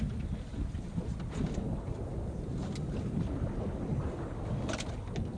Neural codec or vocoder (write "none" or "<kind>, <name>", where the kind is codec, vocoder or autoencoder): none